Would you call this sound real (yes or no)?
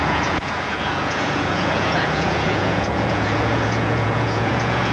no